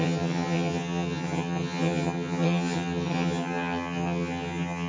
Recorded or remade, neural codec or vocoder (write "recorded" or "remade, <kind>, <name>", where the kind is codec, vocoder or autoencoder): remade, vocoder, HiFi-GAN